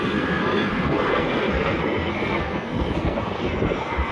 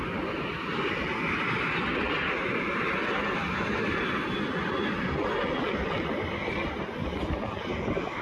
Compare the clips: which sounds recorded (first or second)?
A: second